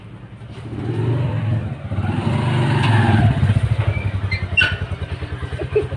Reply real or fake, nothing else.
fake